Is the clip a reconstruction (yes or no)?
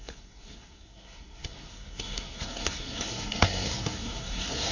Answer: yes